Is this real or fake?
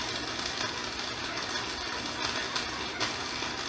real